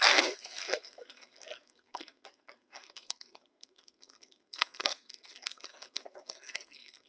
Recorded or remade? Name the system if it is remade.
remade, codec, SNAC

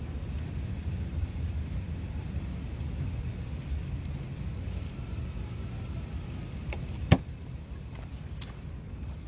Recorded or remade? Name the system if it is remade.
recorded